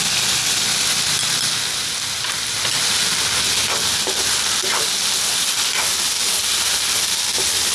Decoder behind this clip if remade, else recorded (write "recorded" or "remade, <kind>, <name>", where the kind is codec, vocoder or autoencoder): recorded